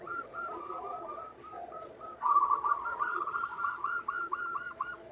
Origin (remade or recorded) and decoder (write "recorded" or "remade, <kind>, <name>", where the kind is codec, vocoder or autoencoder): remade, vocoder, Vocos